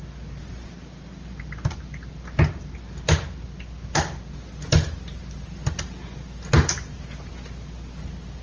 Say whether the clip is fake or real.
real